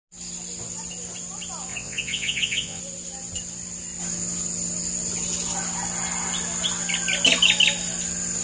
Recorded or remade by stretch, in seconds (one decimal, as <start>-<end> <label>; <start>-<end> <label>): 0.0-1.7 recorded; 1.7-2.8 remade; 2.8-8.4 recorded

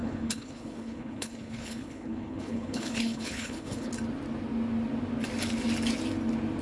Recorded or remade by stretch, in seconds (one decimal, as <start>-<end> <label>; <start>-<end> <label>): 0.0-3.9 remade; 3.9-6.6 recorded

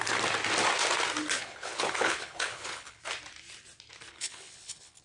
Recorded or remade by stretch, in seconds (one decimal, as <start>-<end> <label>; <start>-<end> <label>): 0.0-1.4 recorded; 1.4-3.0 remade; 3.0-4.1 recorded; 4.1-5.0 remade

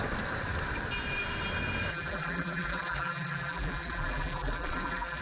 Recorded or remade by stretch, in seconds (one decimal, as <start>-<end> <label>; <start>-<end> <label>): 0.0-1.9 recorded; 1.9-5.2 remade

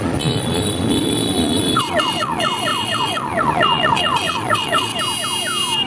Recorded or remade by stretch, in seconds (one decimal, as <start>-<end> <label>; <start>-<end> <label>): 0.0-4.9 remade; 4.9-5.9 recorded

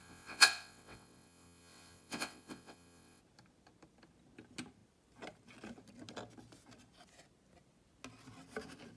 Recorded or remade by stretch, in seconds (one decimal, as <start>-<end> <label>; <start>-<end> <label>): 0.0-3.2 remade; 3.2-9.0 recorded

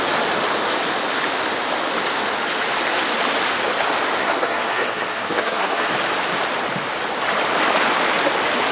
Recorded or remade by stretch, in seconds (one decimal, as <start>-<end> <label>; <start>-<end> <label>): 0.0-4.2 recorded; 4.2-5.9 remade; 5.9-8.7 recorded